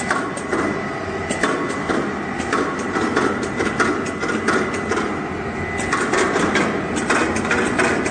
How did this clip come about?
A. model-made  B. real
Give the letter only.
B